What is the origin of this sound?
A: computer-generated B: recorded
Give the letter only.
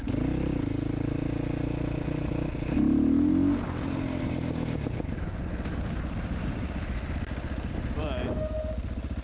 B